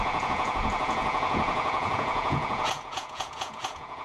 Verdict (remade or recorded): remade